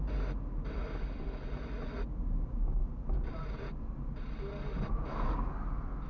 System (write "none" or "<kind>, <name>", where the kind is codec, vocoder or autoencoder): none